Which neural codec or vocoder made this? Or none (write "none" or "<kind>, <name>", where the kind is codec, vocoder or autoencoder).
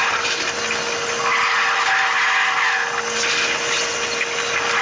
none